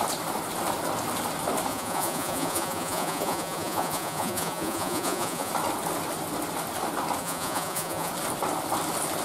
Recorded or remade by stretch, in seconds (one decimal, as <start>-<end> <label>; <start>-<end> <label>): 0.0-1.7 recorded; 1.7-5.5 remade; 5.5-7.2 recorded; 7.2-8.1 remade; 8.1-9.2 recorded